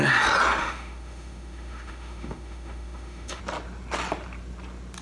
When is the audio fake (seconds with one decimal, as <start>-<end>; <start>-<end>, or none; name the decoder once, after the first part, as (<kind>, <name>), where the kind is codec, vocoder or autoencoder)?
0.6-3.4 (autoencoder, DAC-VAE)